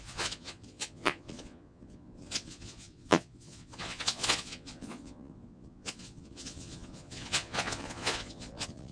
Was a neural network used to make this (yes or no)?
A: yes